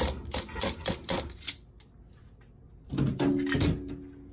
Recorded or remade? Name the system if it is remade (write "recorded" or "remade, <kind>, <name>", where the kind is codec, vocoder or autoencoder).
recorded